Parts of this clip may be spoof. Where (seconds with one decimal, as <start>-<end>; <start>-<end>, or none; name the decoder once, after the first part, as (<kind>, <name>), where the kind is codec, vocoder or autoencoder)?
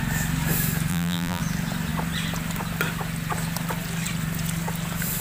0.9-1.4 (vocoder, BigVGAN v2)